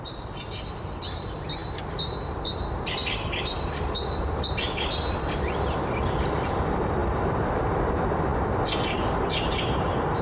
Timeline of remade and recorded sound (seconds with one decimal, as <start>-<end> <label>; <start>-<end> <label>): 0.0-8.3 remade; 8.3-9.4 recorded; 9.4-10.2 remade